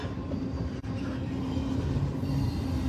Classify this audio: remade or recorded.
recorded